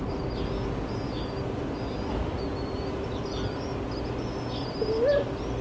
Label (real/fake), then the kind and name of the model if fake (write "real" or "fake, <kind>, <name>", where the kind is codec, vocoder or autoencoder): real